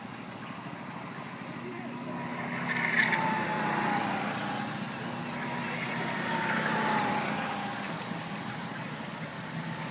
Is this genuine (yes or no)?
yes